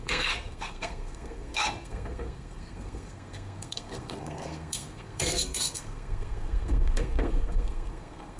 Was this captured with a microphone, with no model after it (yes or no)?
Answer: no